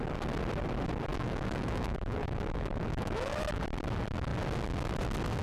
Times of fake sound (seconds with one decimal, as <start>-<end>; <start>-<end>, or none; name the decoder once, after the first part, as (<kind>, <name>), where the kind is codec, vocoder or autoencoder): 1.1-3.6 (autoencoder, DAC-VAE)